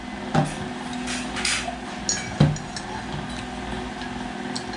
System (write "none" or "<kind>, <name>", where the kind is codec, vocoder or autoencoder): none